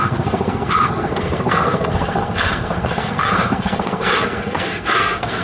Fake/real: fake